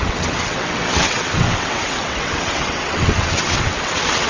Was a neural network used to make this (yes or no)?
yes